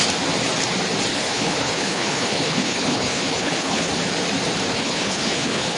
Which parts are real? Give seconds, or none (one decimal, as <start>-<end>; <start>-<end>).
0.0-1.1; 3.9-4.7